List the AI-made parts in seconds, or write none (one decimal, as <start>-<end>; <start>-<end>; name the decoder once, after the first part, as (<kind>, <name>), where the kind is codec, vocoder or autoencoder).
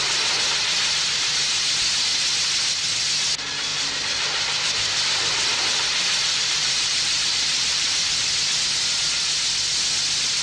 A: 3.7-8.6 (vocoder, BigVGAN v2)